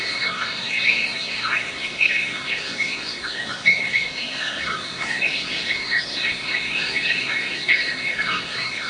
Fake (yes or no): yes